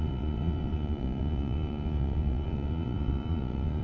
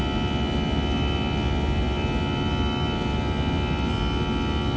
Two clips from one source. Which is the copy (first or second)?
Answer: first